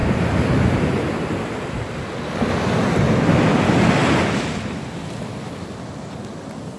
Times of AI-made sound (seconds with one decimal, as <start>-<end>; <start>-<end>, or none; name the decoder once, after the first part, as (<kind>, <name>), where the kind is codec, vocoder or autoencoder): none